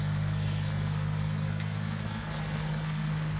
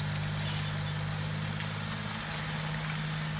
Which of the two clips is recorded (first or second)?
second